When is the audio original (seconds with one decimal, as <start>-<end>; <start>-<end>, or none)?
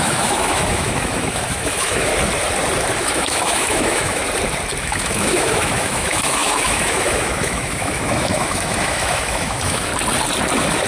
2.1-3.0; 4.2-4.8; 9.9-10.9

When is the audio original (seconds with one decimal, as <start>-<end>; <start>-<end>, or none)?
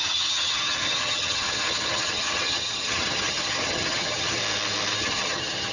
4.4-5.0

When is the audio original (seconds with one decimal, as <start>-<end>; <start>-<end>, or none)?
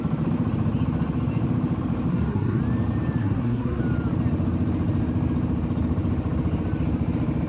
0.0-2.1; 2.6-3.2; 3.8-7.5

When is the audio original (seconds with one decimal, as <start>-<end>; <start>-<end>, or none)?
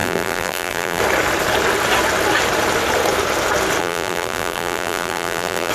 1.0-3.8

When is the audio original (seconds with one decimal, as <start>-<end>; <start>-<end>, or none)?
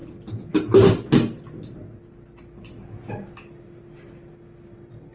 0.0-5.1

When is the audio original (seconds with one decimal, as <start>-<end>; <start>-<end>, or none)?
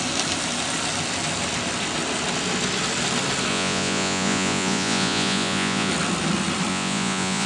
0.0-3.5; 5.9-6.7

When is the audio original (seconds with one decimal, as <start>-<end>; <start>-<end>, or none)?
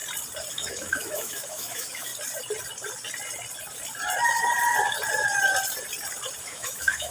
0.0-0.5; 2.1-6.4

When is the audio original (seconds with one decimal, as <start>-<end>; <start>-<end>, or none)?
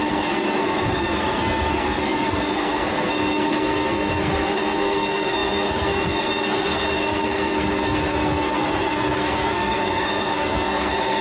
none